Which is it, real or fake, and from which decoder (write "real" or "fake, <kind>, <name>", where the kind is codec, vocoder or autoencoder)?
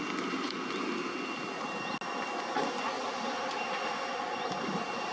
real